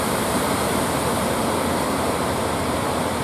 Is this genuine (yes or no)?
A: no